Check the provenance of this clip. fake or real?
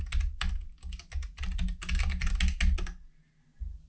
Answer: real